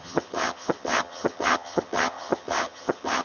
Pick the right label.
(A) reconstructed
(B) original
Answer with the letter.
A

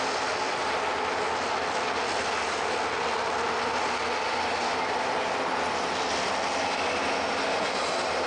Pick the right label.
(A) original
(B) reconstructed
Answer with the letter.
A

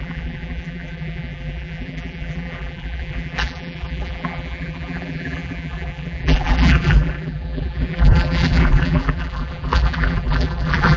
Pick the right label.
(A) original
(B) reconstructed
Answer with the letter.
B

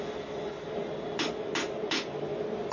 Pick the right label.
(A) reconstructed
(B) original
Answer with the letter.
B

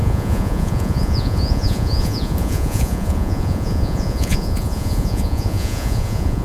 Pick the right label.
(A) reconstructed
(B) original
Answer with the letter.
A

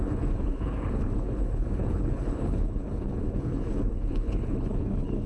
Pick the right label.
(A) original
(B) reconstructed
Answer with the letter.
B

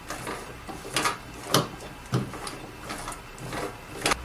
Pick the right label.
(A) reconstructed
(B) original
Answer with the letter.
B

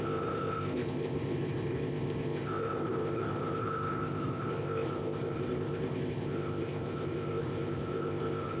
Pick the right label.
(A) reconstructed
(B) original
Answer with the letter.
A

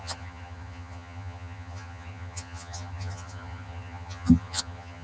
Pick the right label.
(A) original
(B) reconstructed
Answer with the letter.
B